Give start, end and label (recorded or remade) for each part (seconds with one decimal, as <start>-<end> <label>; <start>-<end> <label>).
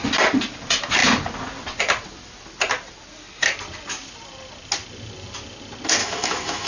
0.0-6.0 recorded; 6.0-6.7 remade